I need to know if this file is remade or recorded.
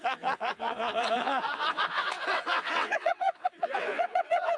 remade